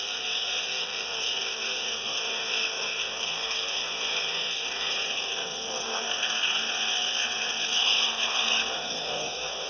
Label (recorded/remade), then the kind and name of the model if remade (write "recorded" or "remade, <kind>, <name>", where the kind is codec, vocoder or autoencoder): remade, codec, SNAC